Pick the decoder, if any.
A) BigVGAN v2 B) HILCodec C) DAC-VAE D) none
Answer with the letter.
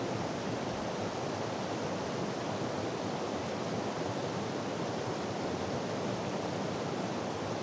D